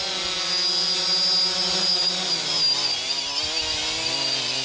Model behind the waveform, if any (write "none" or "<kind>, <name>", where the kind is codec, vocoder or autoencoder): none